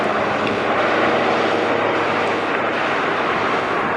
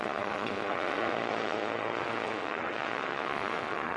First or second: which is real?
first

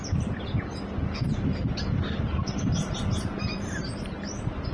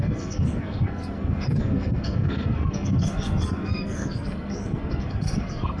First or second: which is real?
first